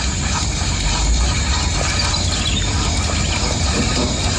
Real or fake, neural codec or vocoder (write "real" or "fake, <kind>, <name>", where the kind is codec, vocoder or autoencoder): real